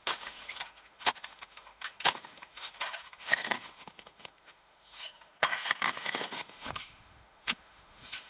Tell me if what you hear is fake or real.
fake